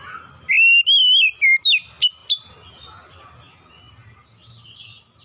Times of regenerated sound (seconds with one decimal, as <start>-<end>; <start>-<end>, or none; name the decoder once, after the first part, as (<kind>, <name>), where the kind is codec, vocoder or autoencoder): none